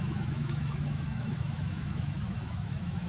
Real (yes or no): no